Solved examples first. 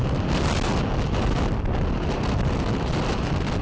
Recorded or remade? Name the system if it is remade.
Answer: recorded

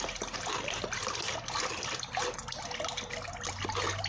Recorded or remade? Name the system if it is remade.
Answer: recorded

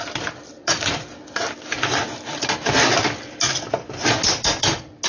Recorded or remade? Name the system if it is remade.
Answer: recorded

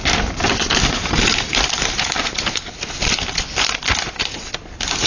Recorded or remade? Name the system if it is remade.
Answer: recorded